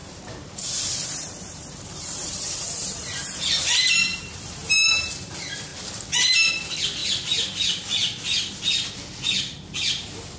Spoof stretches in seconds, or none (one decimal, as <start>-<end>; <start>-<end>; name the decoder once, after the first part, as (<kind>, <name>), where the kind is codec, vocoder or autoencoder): 0.0-5.1 (vocoder, BigVGAN v2)